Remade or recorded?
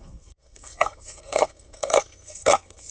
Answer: remade